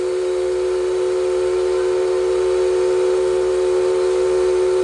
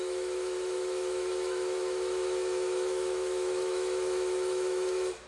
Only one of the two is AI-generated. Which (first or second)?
second